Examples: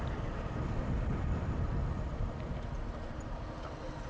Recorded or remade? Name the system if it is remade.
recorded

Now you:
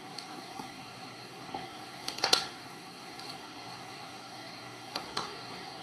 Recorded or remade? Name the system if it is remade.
remade, codec, SNAC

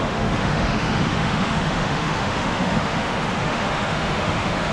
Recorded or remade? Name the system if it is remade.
remade, autoencoder, DAC-VAE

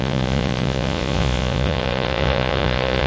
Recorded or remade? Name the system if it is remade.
remade, vocoder, Vocos